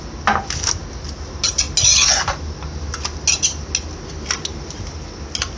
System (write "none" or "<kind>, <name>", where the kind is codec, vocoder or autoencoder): none